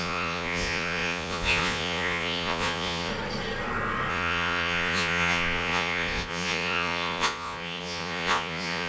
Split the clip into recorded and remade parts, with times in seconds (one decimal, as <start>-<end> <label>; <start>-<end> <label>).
0.0-3.1 remade; 3.1-4.1 recorded; 4.1-8.9 remade